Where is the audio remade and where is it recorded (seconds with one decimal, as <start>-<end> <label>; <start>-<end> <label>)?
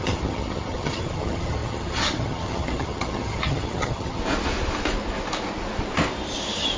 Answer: 0.0-4.2 remade; 4.2-6.8 recorded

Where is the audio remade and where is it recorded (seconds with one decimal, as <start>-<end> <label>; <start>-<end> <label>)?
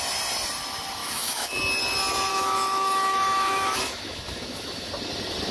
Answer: 0.0-1.0 recorded; 1.0-1.6 remade; 1.6-2.3 recorded; 2.3-4.9 remade; 4.9-5.5 recorded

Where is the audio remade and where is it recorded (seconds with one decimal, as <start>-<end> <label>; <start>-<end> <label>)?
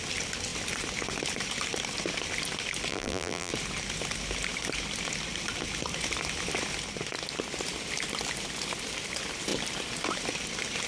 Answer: 0.0-2.9 recorded; 2.9-3.5 remade; 3.5-10.9 recorded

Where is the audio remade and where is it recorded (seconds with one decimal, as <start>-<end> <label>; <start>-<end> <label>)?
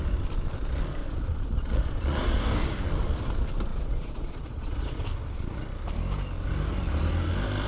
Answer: 0.0-1.0 recorded; 1.0-2.4 remade; 2.4-3.7 recorded; 3.7-5.0 remade; 5.0-7.7 recorded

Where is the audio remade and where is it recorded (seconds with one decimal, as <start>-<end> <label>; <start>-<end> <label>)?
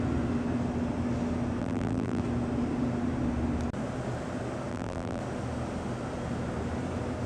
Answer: 0.0-1.6 recorded; 1.6-2.2 remade; 2.2-4.7 recorded; 4.7-5.2 remade; 5.2-7.3 recorded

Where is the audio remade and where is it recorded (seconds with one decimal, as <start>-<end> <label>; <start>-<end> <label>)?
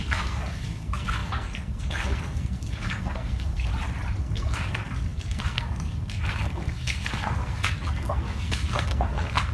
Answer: 0.0-3.7 remade; 3.7-4.2 recorded; 4.2-9.5 remade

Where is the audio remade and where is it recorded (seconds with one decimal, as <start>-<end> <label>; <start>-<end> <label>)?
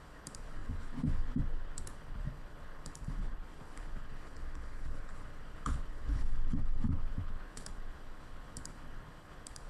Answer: 0.0-9.7 remade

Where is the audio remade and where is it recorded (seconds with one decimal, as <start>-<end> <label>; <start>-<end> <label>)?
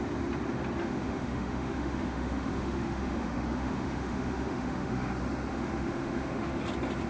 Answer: 0.0-0.8 recorded; 0.8-5.1 remade; 5.1-5.5 recorded; 5.5-6.6 remade; 6.6-7.1 recorded